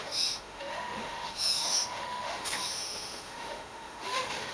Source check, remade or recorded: remade